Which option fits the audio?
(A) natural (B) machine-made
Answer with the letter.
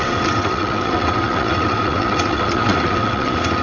B